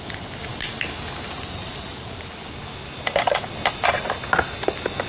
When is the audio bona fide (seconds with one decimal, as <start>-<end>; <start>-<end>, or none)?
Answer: 0.5-1.5; 2.7-5.1

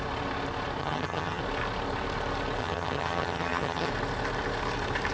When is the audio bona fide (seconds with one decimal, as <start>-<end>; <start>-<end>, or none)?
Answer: 0.0-0.8; 1.4-2.6; 3.9-5.1

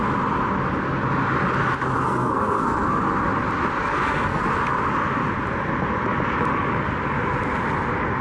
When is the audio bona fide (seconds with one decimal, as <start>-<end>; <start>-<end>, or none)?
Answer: 0.0-2.0; 3.0-3.8; 4.4-8.2